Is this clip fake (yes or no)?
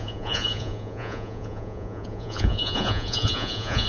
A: yes